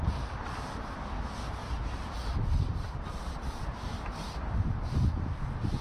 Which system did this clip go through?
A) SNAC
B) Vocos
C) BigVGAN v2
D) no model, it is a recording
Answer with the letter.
D